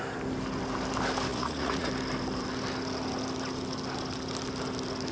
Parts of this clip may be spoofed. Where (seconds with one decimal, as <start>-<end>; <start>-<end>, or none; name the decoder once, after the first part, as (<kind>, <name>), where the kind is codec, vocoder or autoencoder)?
1.3-1.9 (vocoder, Vocos)

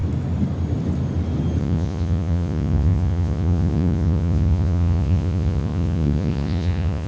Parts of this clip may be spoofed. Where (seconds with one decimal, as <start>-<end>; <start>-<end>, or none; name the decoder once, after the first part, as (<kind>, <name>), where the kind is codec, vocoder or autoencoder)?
1.6-7.1 (vocoder, Vocos)

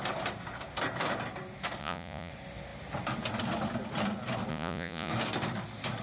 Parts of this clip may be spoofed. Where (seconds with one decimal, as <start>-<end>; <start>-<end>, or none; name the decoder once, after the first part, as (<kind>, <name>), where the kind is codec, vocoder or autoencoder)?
1.8-2.3 (vocoder, Vocos); 4.5-5.1